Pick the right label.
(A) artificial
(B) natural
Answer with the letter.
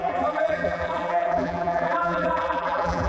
A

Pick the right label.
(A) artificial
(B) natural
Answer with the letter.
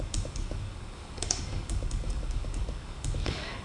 A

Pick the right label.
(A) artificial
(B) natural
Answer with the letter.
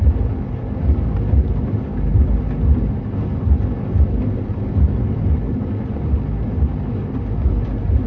B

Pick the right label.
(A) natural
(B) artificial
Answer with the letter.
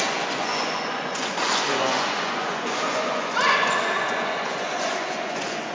B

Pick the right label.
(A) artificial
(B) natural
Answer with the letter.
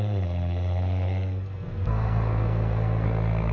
A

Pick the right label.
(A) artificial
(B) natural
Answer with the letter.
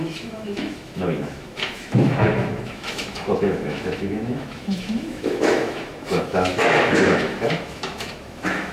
A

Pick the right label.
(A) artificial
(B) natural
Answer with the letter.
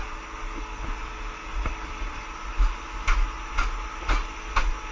B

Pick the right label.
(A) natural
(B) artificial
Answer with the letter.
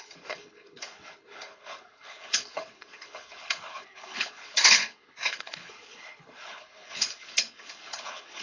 B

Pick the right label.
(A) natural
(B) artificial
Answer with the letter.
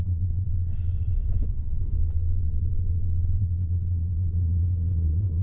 B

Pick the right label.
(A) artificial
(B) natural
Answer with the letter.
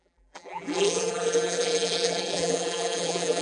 A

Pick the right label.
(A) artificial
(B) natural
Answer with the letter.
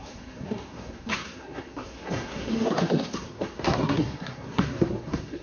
A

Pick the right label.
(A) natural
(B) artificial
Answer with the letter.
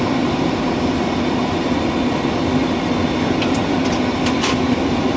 A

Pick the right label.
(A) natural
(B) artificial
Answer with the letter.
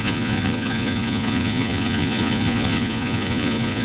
B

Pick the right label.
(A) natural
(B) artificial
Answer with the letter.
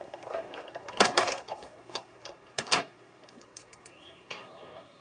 B